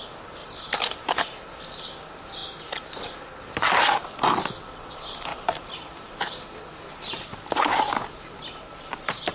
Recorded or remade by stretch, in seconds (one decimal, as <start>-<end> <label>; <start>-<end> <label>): 0.0-0.4 recorded; 0.4-1.6 remade; 1.6-5.3 recorded; 5.3-6.2 remade; 6.2-9.3 recorded